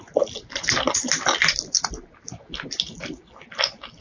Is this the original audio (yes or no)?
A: yes